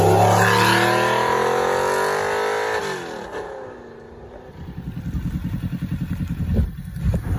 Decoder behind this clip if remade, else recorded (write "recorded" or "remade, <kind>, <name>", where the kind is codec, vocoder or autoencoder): recorded